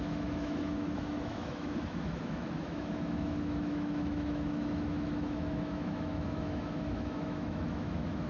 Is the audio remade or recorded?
remade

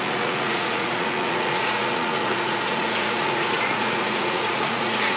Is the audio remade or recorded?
remade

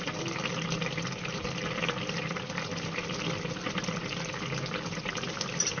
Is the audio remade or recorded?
recorded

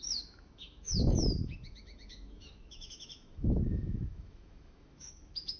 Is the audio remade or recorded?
remade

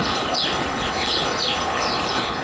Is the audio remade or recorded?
remade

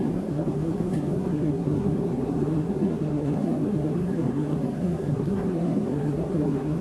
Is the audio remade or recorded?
remade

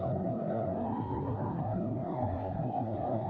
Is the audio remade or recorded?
remade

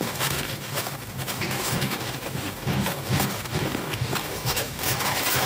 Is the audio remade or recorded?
remade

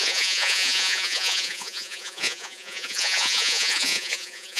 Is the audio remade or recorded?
remade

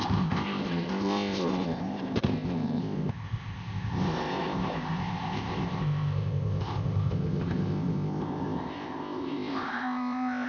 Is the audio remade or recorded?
remade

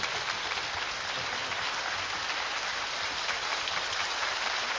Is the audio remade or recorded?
recorded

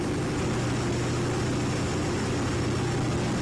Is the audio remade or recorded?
recorded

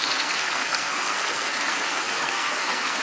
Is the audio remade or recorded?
remade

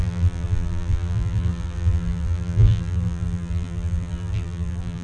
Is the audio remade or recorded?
remade